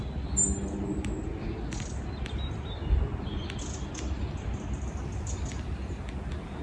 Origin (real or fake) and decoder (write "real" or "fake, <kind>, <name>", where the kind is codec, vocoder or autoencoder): real